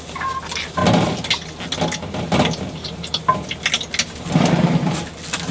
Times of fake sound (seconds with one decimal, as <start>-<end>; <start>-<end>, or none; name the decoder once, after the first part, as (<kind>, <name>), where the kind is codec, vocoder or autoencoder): none